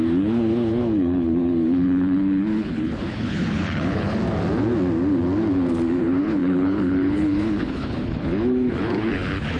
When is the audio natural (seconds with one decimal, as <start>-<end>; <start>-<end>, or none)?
4.2-6.0